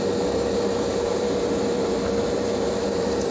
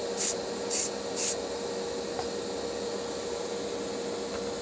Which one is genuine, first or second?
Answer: second